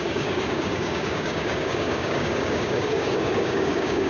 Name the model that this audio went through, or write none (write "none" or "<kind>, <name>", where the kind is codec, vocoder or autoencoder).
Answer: codec, DAC